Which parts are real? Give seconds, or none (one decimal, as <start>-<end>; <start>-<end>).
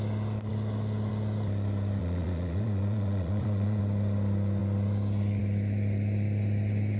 0.0-2.0; 3.8-7.0